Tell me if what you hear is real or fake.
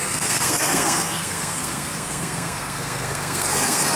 fake